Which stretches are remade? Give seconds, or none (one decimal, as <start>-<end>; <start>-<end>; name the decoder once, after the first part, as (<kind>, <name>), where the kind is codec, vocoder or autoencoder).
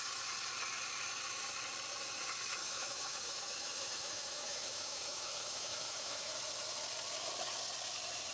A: 2.6-6.3 (autoencoder, DAC-VAE)